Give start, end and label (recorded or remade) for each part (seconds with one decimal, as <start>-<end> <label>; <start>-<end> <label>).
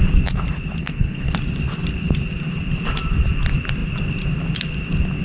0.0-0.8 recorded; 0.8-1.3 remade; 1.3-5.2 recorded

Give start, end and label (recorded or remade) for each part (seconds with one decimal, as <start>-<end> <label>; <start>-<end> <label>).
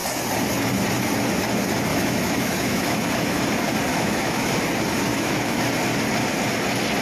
0.0-1.9 recorded; 1.9-3.4 remade; 3.4-3.9 recorded; 3.9-4.5 remade; 4.5-5.1 recorded; 5.1-5.7 remade; 5.7-7.0 recorded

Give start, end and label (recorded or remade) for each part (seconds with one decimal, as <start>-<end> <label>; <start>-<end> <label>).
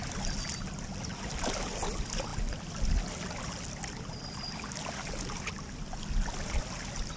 0.0-7.2 recorded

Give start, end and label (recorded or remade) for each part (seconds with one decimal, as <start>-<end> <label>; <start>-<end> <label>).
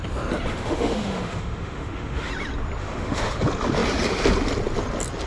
0.0-0.5 recorded; 0.5-2.3 remade; 2.3-2.8 recorded; 2.8-3.4 remade; 3.4-5.3 recorded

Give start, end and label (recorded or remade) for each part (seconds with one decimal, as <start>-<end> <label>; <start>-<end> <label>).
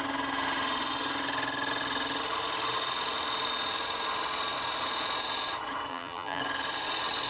0.0-5.9 recorded; 5.9-6.4 remade; 6.4-7.3 recorded